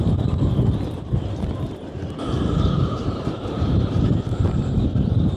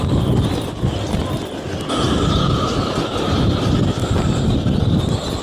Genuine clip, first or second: second